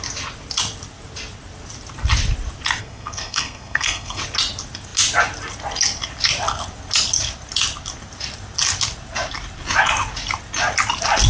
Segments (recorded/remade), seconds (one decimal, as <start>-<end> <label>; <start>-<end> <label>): 0.0-2.8 recorded; 2.8-4.2 remade; 4.2-11.3 recorded